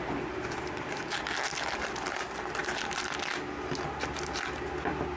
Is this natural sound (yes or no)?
yes